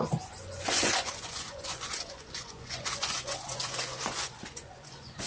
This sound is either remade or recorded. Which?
remade